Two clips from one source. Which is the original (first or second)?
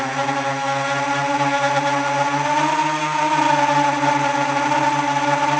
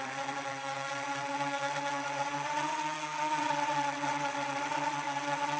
first